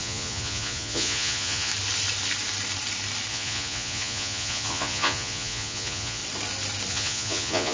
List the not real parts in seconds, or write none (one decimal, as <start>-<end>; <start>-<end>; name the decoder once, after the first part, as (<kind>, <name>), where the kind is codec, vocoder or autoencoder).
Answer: 0.0-1.7 (vocoder, Vocos); 3.3-6.2; 6.9-7.7